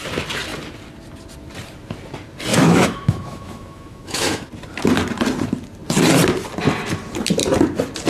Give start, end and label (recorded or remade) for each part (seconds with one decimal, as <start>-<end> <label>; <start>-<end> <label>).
0.0-2.5 recorded; 2.5-4.5 remade; 4.5-8.1 recorded